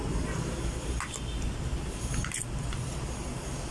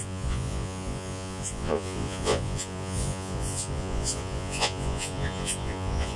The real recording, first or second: first